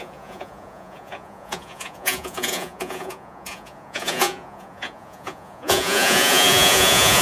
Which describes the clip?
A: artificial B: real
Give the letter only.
A